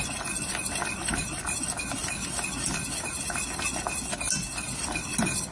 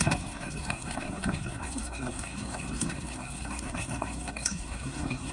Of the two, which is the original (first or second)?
first